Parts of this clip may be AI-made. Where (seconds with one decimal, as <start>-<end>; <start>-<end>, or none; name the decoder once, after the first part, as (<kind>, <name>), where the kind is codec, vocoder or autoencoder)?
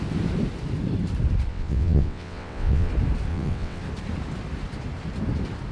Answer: 1.5-2.9 (vocoder, WaveNeXt); 3.3-3.8